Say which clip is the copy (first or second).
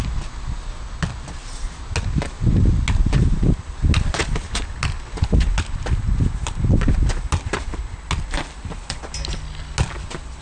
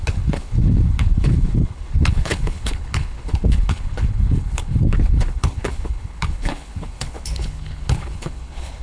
second